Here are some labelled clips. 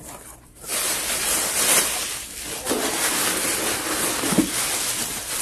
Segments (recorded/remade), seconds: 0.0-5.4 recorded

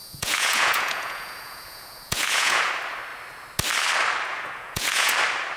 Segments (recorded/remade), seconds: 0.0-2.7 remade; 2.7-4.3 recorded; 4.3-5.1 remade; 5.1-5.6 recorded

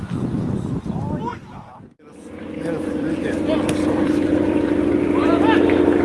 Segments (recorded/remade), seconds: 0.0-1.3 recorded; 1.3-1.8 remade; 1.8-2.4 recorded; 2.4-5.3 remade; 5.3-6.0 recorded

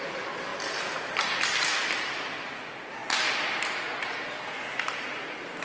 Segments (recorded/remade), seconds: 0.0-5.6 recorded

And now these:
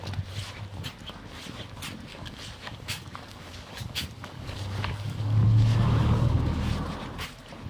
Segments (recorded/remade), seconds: 0.0-2.1 recorded; 2.1-6.7 remade; 6.7-7.7 recorded

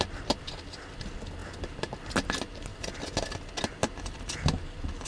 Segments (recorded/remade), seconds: 0.0-5.1 recorded

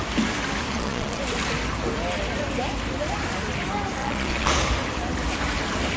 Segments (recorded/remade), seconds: 0.0-0.7 recorded; 0.7-1.2 remade; 1.2-4.0 recorded; 4.0-4.5 remade; 4.5-6.0 recorded